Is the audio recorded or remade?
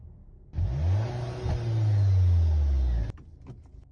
recorded